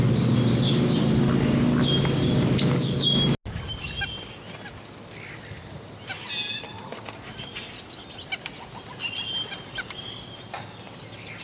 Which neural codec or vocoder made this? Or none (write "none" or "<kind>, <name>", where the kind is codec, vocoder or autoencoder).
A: none